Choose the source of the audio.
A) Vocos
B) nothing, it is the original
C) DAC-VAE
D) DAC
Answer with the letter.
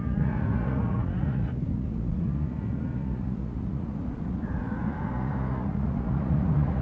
A